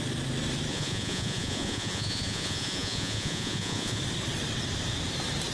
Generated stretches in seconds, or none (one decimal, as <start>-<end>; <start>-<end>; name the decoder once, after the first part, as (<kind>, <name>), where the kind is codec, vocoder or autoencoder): 0.7-4.0 (vocoder, Vocos)